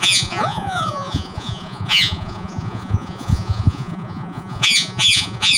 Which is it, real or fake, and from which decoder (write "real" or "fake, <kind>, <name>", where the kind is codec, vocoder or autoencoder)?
fake, vocoder, Vocos